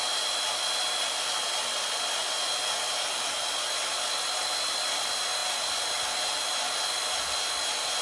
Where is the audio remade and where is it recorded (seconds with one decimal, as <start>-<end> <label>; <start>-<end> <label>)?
0.0-8.0 recorded